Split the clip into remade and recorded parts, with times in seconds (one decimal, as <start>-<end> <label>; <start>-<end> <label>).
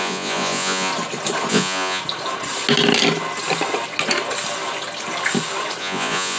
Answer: 0.0-0.9 remade; 0.9-1.5 recorded; 1.5-2.0 remade; 2.0-5.8 recorded; 5.8-6.4 remade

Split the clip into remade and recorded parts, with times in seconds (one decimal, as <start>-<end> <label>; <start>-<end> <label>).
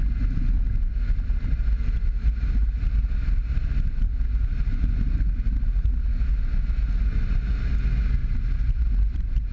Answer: 0.0-0.9 recorded; 0.9-3.1 remade; 3.1-8.2 recorded; 8.2-9.5 remade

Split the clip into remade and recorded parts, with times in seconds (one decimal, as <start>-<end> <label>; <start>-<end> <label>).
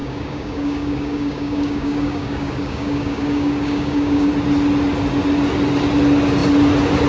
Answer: 0.0-4.3 remade; 4.3-7.1 recorded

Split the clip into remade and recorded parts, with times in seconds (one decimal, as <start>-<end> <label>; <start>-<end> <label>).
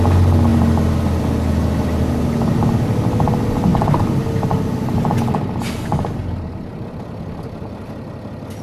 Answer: 0.0-8.6 recorded